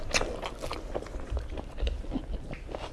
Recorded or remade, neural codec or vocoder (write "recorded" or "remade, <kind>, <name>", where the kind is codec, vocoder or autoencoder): recorded